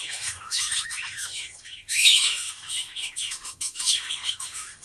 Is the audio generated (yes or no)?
yes